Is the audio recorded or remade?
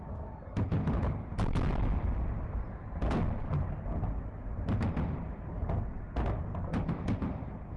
recorded